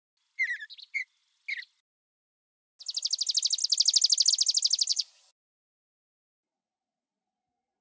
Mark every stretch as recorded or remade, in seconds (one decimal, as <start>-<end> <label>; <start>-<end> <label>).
0.0-4.9 recorded; 4.9-7.3 remade; 7.3-7.8 recorded